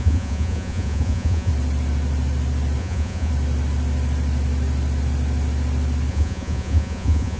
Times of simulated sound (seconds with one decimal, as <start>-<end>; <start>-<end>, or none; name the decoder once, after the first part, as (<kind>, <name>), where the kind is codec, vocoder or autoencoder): 0.0-1.5 (vocoder, Vocos); 2.8-3.3; 6.1-7.4